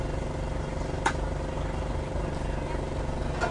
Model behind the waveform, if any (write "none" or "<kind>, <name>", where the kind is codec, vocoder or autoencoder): none